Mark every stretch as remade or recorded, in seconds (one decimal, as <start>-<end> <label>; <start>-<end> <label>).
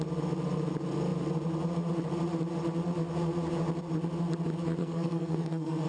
0.0-4.8 recorded; 4.8-5.9 remade